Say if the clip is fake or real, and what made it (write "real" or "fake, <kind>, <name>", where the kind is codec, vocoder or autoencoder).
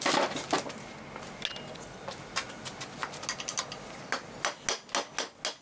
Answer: real